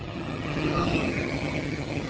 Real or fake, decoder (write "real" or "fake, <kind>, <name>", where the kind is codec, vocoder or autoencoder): fake, vocoder, HiFi-GAN